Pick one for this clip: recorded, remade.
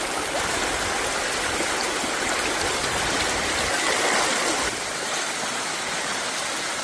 recorded